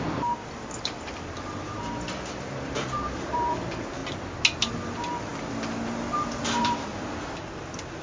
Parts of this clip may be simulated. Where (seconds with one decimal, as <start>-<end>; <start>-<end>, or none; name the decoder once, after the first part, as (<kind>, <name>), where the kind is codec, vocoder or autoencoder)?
0.0-4.0 (vocoder, BigVGAN v2); 4.7-5.3; 6.6-8.0